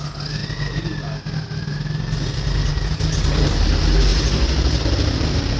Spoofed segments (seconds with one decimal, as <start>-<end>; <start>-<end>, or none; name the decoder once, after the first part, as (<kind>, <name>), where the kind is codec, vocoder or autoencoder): none